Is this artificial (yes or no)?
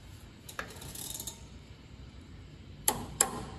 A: yes